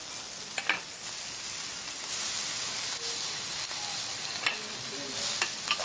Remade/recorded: recorded